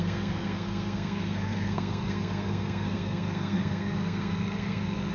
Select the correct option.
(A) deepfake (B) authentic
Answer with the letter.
A